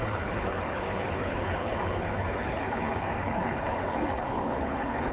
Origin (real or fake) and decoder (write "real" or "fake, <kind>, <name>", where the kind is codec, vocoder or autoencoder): fake, codec, HILCodec